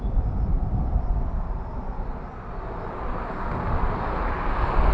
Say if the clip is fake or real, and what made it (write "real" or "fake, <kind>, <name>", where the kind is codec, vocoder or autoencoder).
real